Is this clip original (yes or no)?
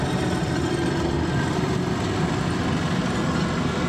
yes